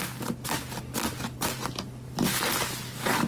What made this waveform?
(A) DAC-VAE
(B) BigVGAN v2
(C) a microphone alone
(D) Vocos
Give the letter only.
C